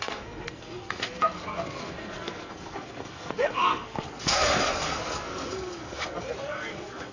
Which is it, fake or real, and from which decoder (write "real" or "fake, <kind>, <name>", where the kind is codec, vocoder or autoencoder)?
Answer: fake, codec, SNAC